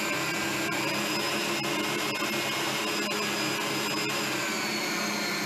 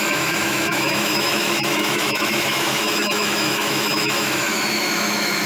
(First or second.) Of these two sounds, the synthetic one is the second